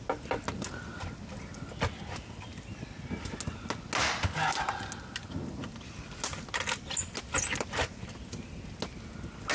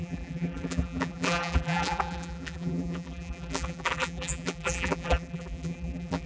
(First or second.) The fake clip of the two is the second